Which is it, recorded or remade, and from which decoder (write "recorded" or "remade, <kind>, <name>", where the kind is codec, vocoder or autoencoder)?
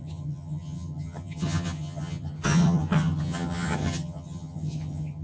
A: remade, vocoder, HiFi-GAN